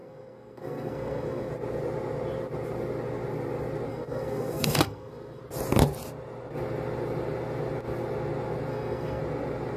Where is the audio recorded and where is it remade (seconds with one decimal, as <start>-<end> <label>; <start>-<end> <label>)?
0.0-1.5 remade; 1.5-3.9 recorded; 3.9-5.4 remade; 5.4-8.7 recorded; 8.7-9.2 remade; 9.2-9.8 recorded